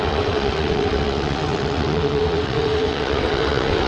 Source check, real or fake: fake